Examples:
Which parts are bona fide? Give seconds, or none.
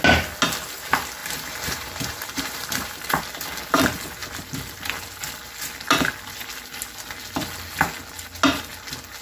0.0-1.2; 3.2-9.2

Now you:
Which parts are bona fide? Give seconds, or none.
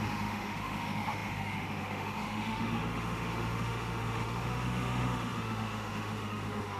none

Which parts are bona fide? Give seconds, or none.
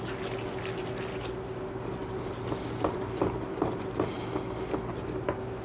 0.0-5.6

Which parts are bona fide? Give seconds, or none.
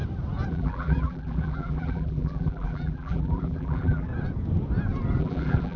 0.0-0.5; 4.1-5.2